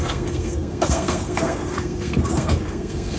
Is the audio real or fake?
fake